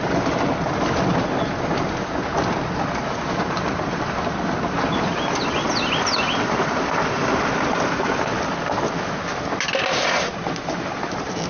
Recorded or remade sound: recorded